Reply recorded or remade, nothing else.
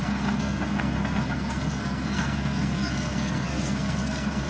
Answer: remade